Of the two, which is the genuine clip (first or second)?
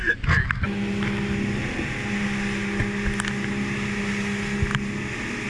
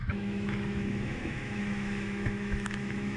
first